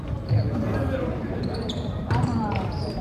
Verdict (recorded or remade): remade